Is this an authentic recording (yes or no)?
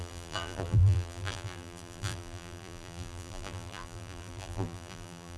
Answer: no